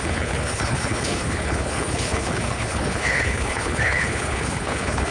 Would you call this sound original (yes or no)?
no